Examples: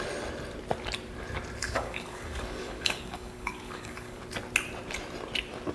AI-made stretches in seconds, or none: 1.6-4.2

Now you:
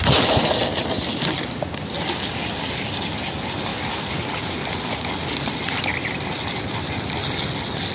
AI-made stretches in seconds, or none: none

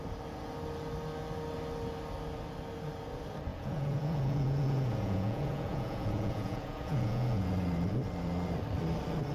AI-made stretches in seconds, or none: 3.5-7.5

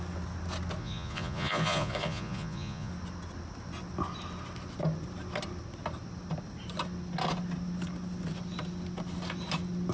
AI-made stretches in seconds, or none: 0.8-2.9

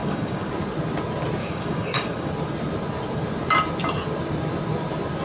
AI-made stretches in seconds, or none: 0.0-0.5; 1.4-2.3

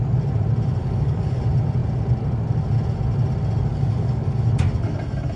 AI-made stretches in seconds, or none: 0.8-1.4; 3.7-4.4

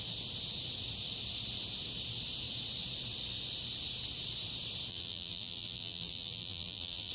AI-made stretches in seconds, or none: 4.9-7.1